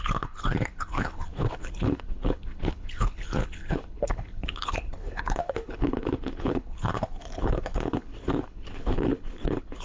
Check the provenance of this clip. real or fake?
fake